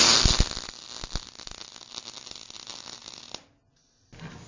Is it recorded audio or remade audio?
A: recorded